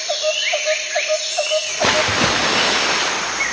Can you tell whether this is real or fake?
real